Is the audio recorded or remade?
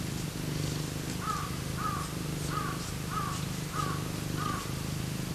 recorded